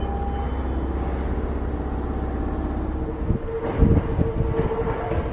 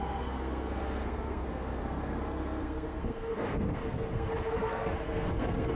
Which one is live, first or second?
first